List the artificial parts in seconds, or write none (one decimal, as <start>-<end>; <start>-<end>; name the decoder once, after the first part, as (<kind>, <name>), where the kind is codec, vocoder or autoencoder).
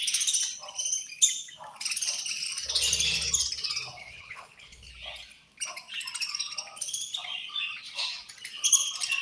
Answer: 4.0-4.9 (codec, HILCodec)